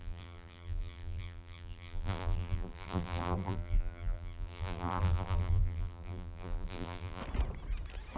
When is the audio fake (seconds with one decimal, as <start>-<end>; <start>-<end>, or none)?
0.0-7.2